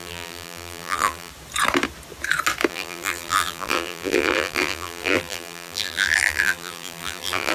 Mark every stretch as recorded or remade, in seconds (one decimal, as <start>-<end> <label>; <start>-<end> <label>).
0.0-1.3 remade; 1.3-2.7 recorded; 2.7-7.5 remade